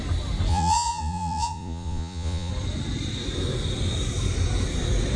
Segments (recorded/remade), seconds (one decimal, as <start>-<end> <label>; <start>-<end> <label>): 0.0-0.5 recorded; 0.5-2.5 remade; 2.5-5.2 recorded